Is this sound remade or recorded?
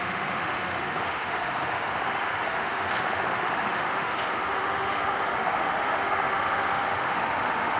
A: remade